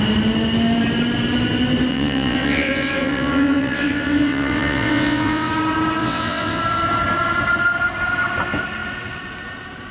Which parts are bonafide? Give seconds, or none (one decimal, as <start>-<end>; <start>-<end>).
0.0-1.9; 5.5-6.0; 6.6-9.9

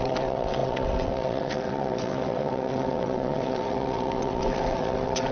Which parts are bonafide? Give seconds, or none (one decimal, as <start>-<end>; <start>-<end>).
none